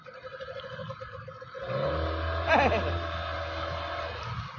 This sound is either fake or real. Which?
real